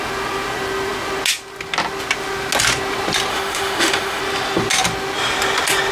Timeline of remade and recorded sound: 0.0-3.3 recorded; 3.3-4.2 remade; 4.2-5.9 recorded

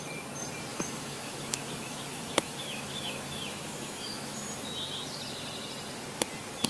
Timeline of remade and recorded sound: 0.0-0.7 recorded; 0.7-4.7 remade; 4.7-6.7 recorded

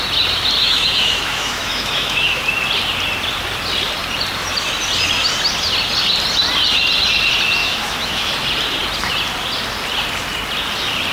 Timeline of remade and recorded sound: 0.0-0.6 recorded; 0.6-2.4 remade; 2.4-7.6 recorded; 7.6-8.3 remade; 8.3-11.1 recorded